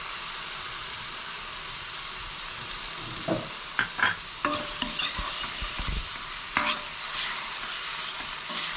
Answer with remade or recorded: remade